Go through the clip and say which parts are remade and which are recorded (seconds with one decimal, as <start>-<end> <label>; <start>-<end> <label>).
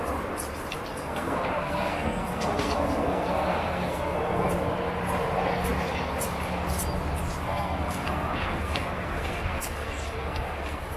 0.0-0.9 recorded; 0.9-4.5 remade; 4.5-7.5 recorded; 7.5-11.0 remade